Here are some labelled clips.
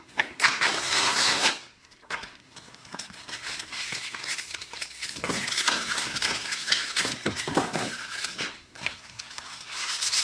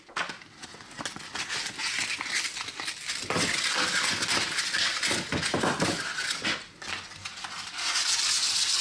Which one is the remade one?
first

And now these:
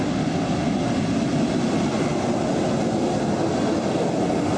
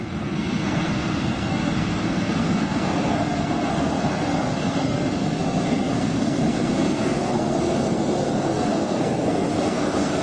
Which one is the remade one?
second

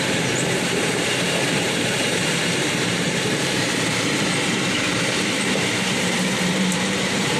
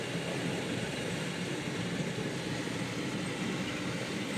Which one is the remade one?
first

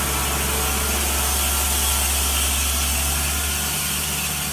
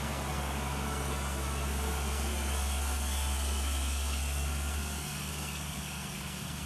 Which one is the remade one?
second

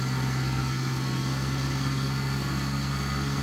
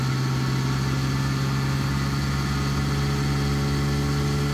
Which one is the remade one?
first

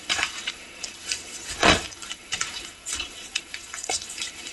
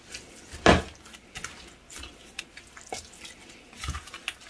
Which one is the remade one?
first